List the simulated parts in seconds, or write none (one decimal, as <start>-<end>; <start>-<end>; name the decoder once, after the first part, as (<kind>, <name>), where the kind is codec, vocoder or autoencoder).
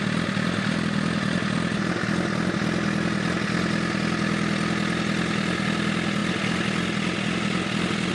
none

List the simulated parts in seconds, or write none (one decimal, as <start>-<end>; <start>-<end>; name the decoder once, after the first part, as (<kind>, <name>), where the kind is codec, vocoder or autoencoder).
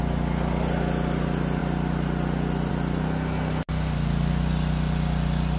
none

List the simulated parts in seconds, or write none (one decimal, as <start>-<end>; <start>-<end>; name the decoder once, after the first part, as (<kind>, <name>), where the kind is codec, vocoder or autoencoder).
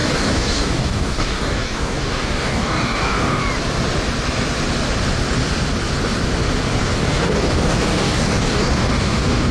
0.0-3.4 (codec, DAC); 6.8-9.5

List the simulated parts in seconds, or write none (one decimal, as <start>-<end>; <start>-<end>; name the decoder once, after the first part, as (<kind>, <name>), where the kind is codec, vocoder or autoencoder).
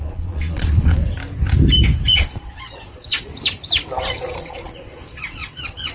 0.0-1.0 (vocoder, Vocos); 2.1-3.3; 4.0-5.9